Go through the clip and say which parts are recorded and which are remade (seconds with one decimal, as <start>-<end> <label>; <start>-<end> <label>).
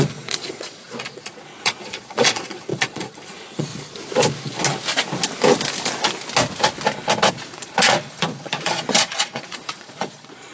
0.0-3.7 remade; 3.7-7.3 recorded; 7.3-10.5 remade